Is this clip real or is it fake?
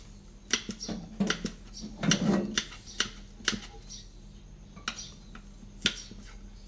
real